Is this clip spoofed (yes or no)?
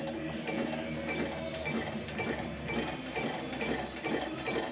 no